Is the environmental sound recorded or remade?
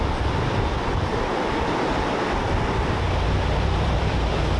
remade